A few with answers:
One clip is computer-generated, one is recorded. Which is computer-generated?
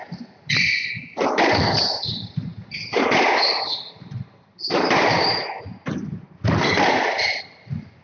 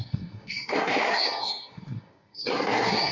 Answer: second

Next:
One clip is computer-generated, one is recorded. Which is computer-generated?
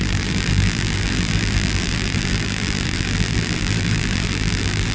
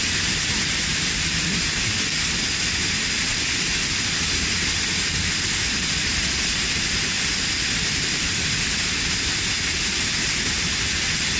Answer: first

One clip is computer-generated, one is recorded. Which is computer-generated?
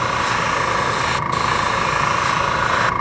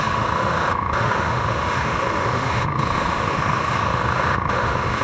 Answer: second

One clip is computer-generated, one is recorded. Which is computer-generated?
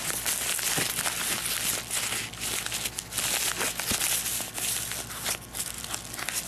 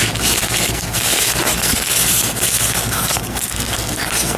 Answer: second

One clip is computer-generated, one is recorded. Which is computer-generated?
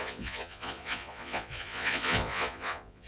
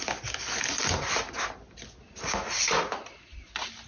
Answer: first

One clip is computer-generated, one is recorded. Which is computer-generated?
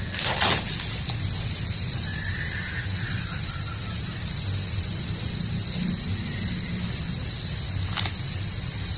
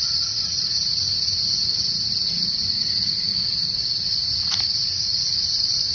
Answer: second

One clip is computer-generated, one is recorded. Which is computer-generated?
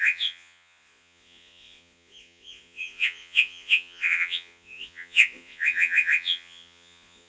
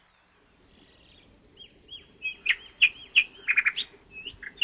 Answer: first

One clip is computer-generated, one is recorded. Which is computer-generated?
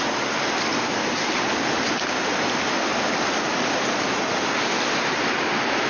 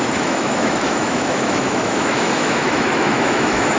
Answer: second